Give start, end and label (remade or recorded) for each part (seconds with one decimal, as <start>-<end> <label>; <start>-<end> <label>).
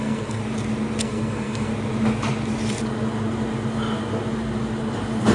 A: 0.0-0.4 remade; 0.4-1.0 recorded; 1.0-1.7 remade; 1.7-5.3 recorded